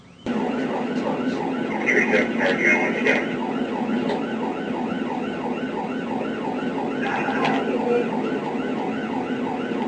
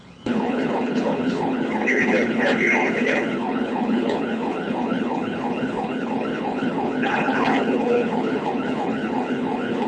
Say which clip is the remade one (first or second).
second